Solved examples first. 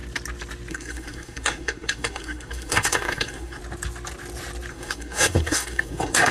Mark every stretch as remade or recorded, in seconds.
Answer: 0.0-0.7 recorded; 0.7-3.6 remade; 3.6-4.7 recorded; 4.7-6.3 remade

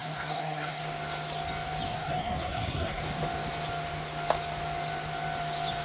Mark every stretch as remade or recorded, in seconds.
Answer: 0.0-0.8 remade; 0.8-1.9 recorded; 1.9-3.0 remade; 3.0-5.8 recorded

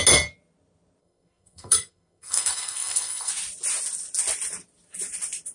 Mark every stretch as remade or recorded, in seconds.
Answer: 0.0-1.0 recorded; 1.0-3.3 remade; 3.3-5.5 recorded

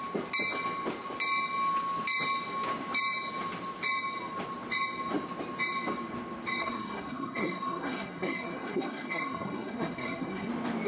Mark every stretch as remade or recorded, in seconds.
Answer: 0.0-6.6 recorded; 6.6-10.5 remade; 10.5-10.9 recorded

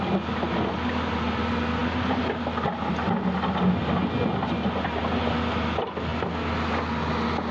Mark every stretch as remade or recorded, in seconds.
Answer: 0.0-7.5 recorded

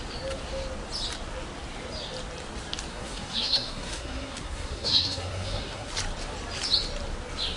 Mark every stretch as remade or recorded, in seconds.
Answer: 0.0-2.9 recorded; 2.9-5.9 remade; 5.9-7.6 recorded

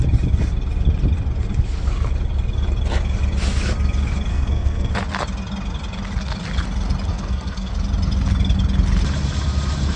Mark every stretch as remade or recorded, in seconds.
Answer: 0.0-4.3 recorded; 4.3-4.9 remade; 4.9-7.1 recorded; 7.1-7.7 remade; 7.7-10.0 recorded